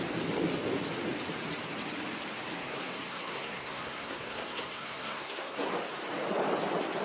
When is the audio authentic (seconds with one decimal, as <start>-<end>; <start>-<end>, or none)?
0.0-2.6; 5.7-7.0